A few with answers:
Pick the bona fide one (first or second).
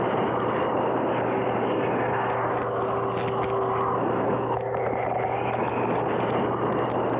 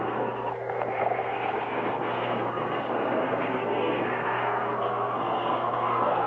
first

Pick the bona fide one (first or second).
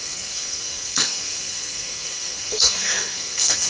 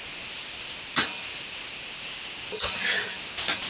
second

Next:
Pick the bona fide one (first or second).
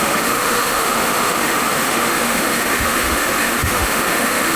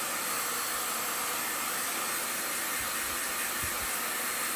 second